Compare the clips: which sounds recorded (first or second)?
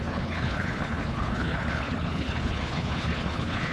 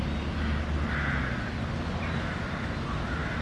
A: second